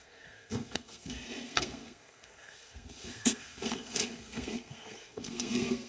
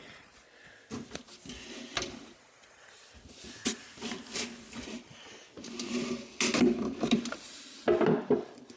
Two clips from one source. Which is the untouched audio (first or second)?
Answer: second